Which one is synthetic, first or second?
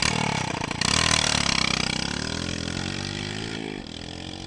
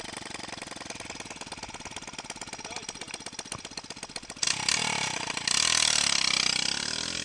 first